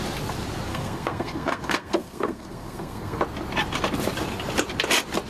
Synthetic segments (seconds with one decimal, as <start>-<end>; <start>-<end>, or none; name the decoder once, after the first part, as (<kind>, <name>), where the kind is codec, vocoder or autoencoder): 0.7-3.2 (codec, SNAC)